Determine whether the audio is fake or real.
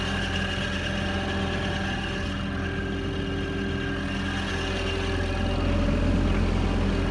real